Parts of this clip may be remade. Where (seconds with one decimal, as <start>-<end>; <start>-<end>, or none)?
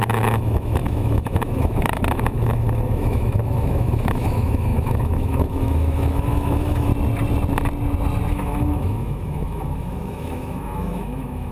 0.0-6.9; 8.3-11.5